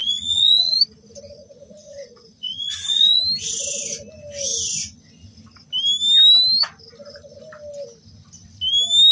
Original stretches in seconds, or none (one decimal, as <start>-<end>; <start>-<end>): 0.8-1.4; 3.2-9.1